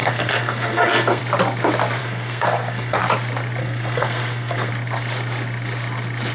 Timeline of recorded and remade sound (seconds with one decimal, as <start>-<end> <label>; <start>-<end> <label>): 0.0-1.2 remade; 1.2-2.0 recorded; 2.0-3.0 remade; 3.0-3.6 recorded; 3.6-4.7 remade; 4.7-6.3 recorded